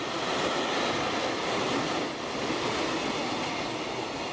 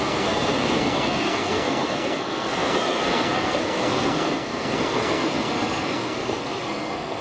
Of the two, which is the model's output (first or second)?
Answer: second